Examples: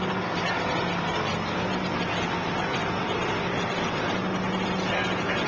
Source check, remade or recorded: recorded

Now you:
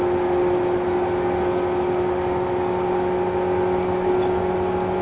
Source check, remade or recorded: recorded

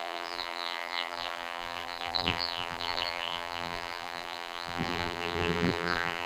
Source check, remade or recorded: remade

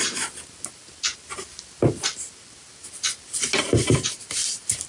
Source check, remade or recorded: recorded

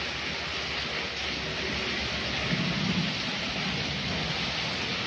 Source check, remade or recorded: recorded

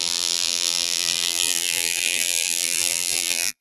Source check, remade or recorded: remade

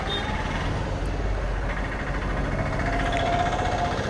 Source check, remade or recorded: recorded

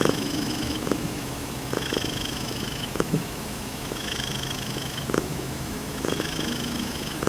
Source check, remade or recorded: remade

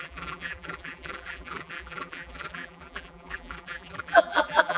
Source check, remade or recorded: remade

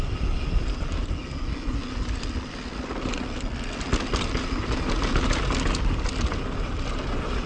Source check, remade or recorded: recorded